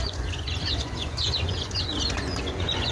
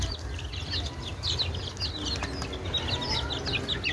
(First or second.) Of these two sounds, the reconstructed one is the first